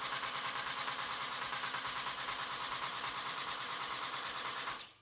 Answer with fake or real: fake